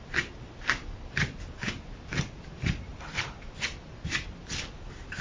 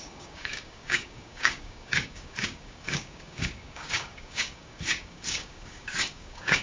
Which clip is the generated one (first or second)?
second